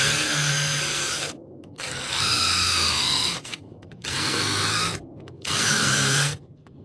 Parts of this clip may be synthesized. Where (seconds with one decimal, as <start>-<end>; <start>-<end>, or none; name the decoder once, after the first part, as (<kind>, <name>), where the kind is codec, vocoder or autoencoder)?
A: 0.0-6.8 (codec, SNAC)